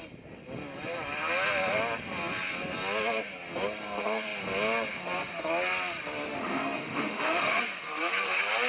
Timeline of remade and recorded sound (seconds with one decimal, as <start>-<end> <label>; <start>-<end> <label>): 0.0-6.3 recorded; 6.3-7.6 remade; 7.6-8.7 recorded